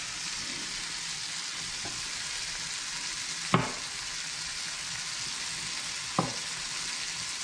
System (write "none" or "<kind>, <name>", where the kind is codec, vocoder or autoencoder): none